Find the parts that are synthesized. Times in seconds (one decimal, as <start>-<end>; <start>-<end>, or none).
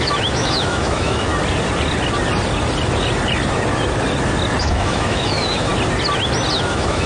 0.0-1.3; 4.6-5.7; 6.5-7.1